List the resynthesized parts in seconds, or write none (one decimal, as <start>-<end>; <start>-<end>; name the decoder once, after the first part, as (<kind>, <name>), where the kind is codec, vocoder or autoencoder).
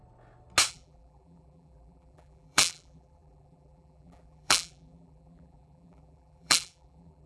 0.7-7.3 (vocoder, BigVGAN v2)